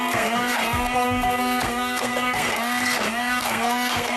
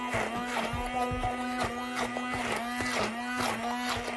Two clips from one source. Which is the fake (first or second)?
first